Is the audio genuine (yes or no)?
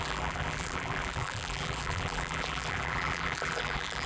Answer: no